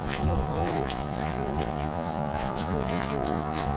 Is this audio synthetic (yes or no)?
yes